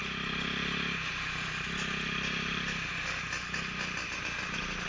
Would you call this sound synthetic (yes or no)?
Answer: no